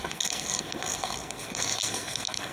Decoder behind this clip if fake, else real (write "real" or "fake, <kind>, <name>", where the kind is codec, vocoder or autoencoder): fake, codec, SNAC